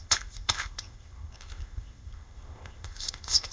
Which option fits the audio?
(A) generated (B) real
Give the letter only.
A